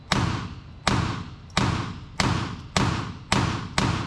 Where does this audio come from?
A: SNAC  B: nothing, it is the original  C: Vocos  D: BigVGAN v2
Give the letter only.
B